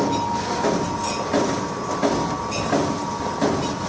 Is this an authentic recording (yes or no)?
yes